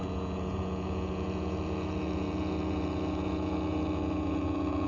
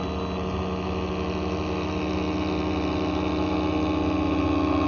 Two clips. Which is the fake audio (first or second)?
first